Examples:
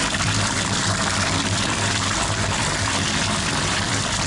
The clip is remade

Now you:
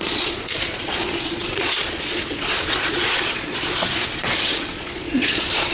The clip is remade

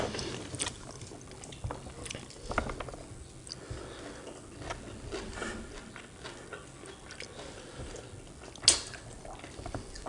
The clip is recorded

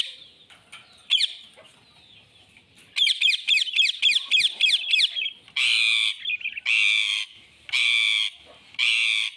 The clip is recorded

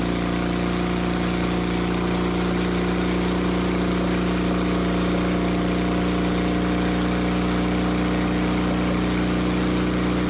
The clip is recorded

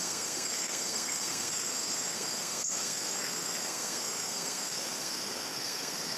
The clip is remade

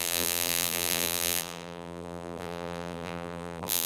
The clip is remade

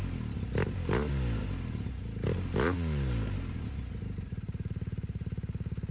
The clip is recorded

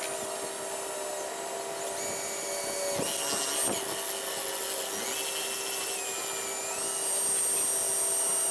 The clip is recorded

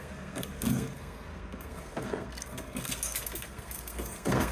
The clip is remade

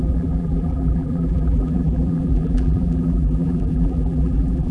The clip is remade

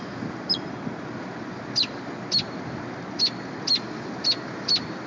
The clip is recorded